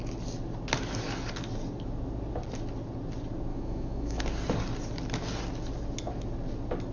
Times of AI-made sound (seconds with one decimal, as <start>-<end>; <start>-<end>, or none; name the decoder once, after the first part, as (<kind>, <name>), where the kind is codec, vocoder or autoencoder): 3.5-4.2 (autoencoder, DAC-VAE)